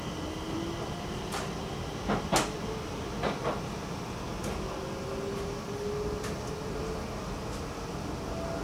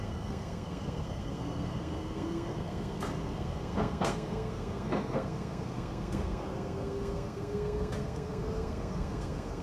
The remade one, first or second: second